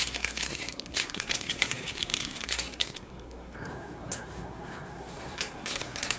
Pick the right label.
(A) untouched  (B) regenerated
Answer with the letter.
B